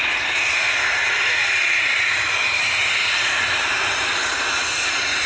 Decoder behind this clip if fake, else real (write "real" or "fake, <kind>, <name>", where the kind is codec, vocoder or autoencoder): real